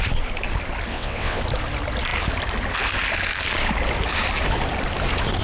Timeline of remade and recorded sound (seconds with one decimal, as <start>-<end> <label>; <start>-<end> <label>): 0.0-0.9 recorded; 0.9-1.4 remade; 1.4-5.4 recorded